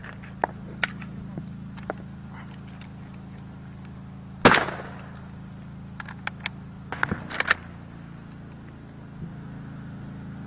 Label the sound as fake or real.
real